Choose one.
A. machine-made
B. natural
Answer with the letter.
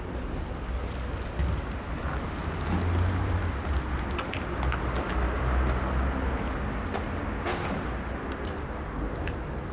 B